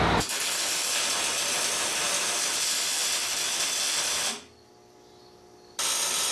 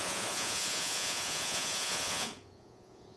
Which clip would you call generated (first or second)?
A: second